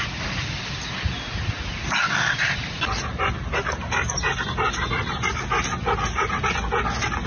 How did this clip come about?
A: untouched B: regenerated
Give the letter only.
A